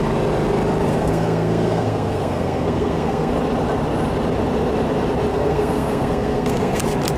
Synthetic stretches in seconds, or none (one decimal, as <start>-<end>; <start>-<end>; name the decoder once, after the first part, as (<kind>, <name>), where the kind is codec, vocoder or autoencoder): 0.9-3.3 (codec, SNAC); 5.3-6.8